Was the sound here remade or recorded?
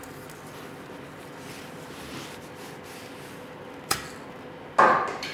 recorded